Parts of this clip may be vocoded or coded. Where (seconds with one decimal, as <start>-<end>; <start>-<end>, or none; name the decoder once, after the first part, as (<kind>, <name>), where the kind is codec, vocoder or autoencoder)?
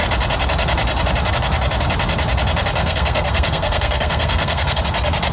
2.8-4.8 (codec, SNAC)